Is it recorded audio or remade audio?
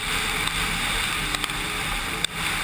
recorded